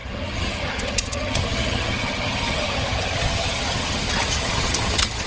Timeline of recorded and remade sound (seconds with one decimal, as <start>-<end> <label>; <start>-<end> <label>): 0.0-5.3 remade